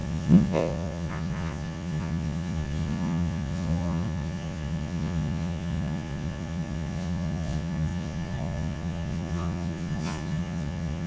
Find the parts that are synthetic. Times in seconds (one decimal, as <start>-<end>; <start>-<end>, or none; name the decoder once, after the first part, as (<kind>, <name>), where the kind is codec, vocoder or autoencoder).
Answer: 0.0-11.1 (vocoder, Vocos)